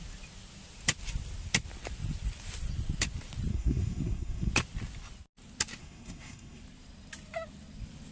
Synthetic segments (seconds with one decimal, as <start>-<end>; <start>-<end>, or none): 3.5-4.5; 5.8-6.6